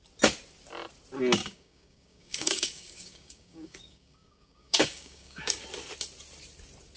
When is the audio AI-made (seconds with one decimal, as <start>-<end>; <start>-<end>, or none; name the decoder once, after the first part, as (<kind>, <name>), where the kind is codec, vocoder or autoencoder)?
1.4-5.6 (codec, DAC)